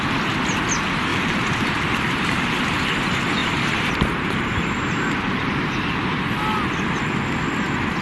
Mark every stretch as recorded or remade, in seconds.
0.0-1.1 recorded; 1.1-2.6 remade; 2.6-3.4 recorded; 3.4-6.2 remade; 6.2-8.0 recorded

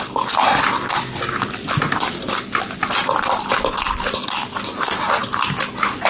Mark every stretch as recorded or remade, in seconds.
0.0-6.1 recorded

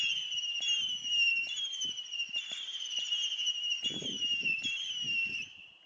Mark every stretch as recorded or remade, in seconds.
0.0-1.3 recorded; 1.3-4.8 remade; 4.8-5.9 recorded